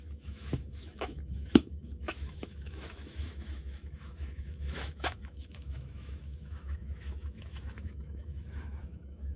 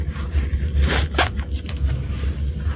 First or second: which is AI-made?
first